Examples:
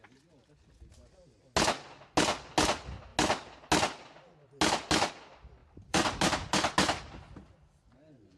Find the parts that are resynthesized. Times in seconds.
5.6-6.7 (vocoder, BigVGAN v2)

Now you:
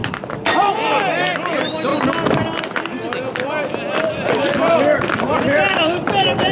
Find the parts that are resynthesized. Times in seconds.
0.6-1.9 (vocoder, BigVGAN v2); 4.3-6.5

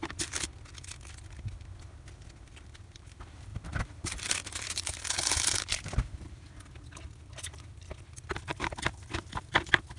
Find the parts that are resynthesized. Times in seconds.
3.5-6.5 (vocoder, BigVGAN v2); 8.5-9.3